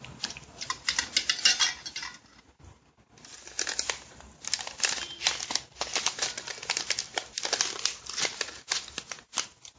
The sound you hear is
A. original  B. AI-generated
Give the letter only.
A